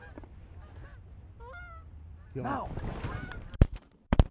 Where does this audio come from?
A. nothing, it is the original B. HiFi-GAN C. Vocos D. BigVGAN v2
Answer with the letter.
D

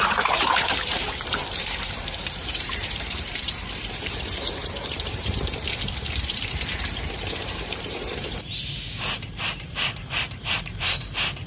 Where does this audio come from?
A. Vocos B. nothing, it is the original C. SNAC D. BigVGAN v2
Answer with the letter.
D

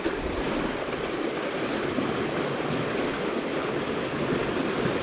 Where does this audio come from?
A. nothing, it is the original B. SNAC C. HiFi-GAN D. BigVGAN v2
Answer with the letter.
A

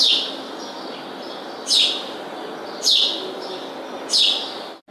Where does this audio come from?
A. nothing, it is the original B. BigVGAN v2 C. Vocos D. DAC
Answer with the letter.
A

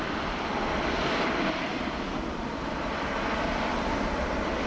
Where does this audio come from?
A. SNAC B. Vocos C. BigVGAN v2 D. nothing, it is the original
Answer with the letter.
C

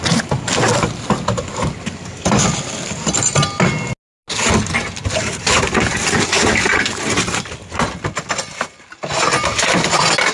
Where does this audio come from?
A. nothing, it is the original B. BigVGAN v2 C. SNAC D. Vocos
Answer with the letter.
A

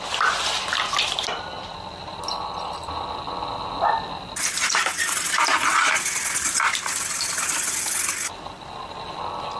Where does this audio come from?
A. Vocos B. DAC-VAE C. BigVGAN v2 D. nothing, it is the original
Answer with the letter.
D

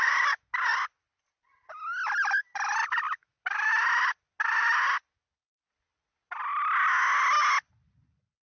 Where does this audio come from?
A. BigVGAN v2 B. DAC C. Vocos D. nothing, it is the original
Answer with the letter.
D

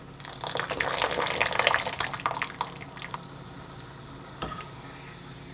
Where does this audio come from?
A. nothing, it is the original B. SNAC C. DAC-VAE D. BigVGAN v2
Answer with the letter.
A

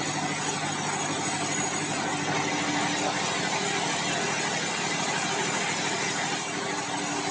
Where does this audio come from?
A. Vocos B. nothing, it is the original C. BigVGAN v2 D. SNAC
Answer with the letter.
B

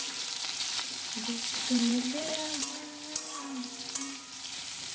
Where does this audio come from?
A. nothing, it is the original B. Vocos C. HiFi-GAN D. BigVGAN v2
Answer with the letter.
D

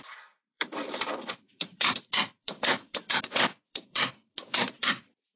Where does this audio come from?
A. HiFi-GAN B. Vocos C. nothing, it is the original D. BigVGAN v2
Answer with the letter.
D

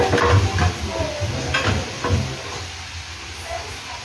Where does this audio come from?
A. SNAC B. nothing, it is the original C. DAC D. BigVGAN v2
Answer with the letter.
B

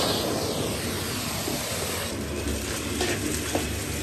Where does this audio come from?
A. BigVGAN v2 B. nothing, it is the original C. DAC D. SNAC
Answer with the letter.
B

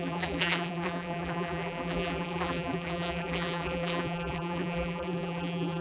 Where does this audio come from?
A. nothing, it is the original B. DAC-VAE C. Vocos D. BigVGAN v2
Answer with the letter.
D